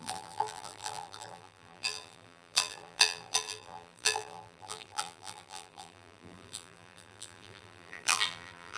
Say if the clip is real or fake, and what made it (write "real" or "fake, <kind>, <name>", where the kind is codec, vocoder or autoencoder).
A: fake, vocoder, BigVGAN v2